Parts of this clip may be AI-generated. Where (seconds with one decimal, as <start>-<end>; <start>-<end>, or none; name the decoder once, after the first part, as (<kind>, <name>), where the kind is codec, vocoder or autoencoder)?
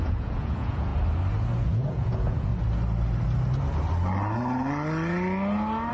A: 0.0-0.9 (vocoder, Vocos); 1.6-2.5